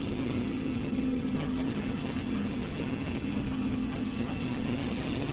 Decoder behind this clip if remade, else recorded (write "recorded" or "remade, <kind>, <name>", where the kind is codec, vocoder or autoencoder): remade, vocoder, HiFi-GAN